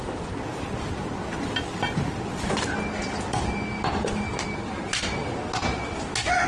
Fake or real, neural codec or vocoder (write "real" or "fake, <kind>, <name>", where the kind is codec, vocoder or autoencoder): real